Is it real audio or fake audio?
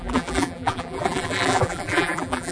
fake